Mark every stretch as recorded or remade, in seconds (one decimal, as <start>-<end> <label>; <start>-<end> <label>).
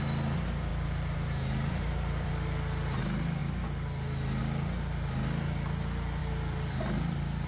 0.0-0.7 recorded; 0.7-2.3 remade; 2.3-6.2 recorded; 6.2-7.5 remade